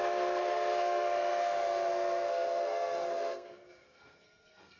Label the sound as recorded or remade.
remade